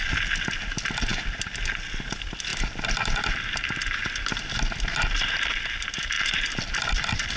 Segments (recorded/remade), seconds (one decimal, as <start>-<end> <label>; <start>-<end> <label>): 0.0-7.4 recorded